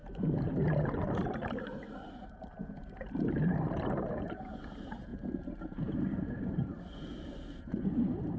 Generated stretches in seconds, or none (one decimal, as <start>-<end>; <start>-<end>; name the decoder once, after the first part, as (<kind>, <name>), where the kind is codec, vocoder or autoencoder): 0.0-8.4 (vocoder, BigVGAN v2)